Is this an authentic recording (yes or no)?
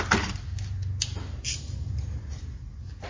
yes